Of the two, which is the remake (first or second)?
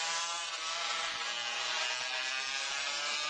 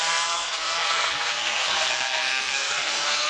second